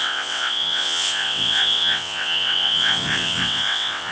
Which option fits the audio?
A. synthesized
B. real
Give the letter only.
A